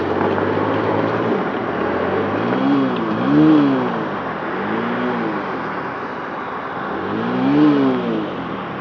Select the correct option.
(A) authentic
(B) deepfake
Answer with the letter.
A